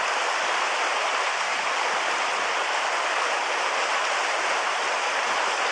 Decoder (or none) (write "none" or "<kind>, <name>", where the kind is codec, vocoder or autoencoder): none